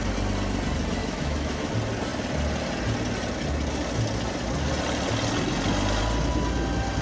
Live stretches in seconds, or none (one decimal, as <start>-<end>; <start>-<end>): 0.0-1.0; 1.7-7.0